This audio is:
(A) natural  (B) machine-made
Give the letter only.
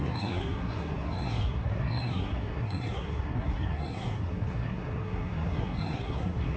B